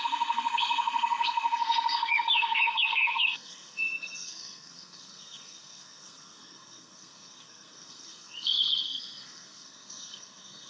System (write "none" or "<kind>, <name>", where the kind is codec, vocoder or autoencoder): codec, SNAC